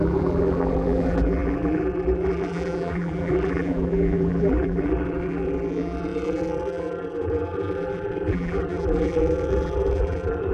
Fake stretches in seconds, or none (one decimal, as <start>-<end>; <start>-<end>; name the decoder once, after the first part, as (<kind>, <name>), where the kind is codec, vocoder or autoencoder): 0.0-10.5 (vocoder, BigVGAN v2)